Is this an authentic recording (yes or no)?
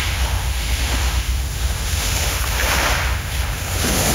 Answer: no